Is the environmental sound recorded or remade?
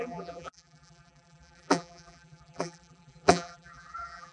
remade